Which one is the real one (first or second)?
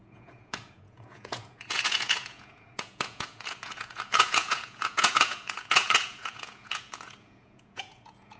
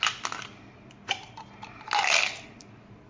second